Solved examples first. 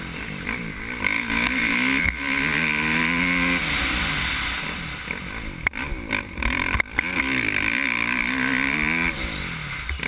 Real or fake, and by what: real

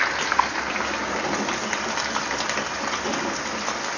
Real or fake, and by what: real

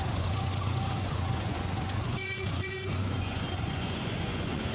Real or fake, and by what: fake, vocoder, Vocos